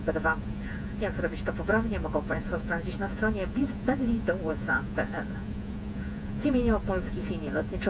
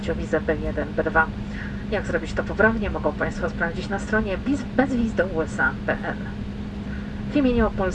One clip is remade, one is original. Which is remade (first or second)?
first